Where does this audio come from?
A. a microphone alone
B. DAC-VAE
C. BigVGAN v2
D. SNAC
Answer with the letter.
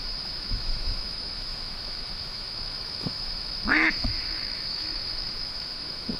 B